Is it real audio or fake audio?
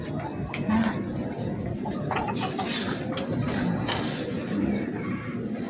real